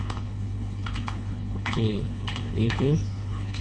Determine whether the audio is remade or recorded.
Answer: remade